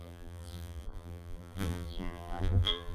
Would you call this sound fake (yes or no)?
yes